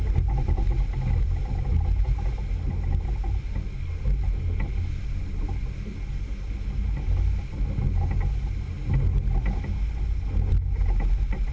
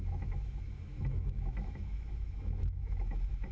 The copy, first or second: second